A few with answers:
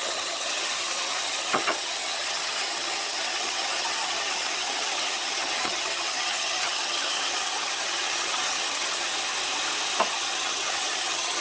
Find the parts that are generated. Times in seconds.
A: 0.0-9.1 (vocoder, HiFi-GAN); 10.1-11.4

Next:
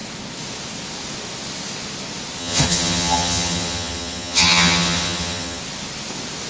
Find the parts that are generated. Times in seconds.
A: 2.4-5.6 (vocoder, HiFi-GAN)